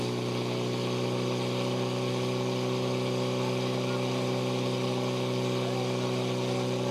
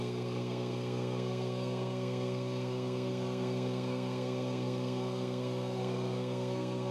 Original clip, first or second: first